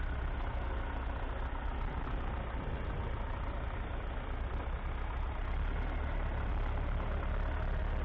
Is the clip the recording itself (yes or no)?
yes